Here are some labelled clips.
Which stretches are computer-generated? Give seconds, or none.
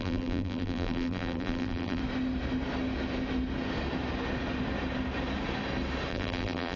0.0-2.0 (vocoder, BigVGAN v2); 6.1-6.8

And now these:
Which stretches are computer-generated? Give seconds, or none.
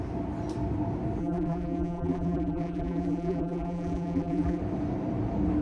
1.2-4.6 (vocoder, BigVGAN v2)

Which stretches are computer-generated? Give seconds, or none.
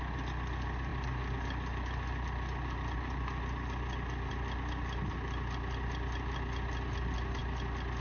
none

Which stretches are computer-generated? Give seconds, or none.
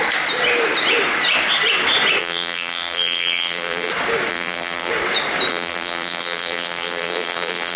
2.2-3.9 (vocoder, BigVGAN v2); 4.3-4.9; 5.5-7.8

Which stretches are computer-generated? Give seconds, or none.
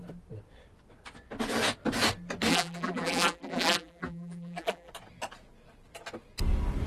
2.5-4.9 (vocoder, BigVGAN v2)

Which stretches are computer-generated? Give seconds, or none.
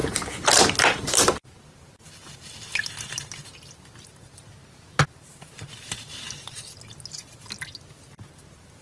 0.0-2.5 (vocoder, BigVGAN v2)